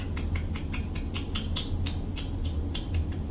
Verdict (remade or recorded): recorded